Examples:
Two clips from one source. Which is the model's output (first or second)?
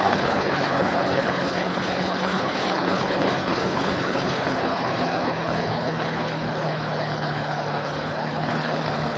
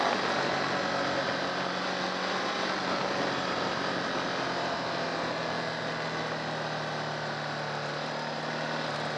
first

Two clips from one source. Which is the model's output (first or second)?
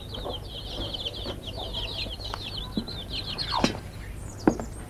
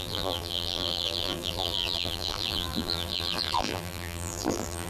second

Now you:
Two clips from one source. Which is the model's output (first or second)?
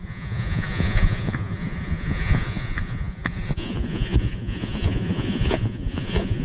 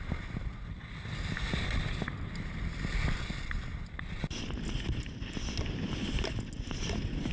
first